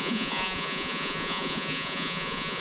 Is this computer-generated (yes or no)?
yes